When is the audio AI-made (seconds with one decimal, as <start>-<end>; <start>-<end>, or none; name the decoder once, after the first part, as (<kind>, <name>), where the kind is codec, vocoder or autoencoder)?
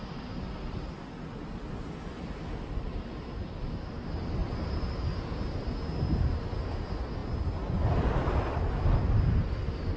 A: 4.4-5.0 (vocoder, BigVGAN v2)